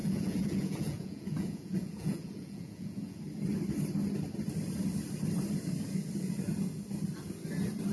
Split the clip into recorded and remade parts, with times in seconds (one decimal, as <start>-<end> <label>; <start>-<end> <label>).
0.0-3.2 remade; 3.2-7.9 recorded